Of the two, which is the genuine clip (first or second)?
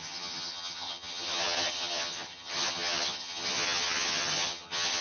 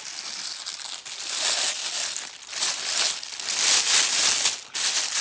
second